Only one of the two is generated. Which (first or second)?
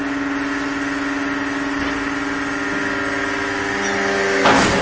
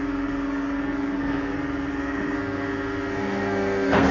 second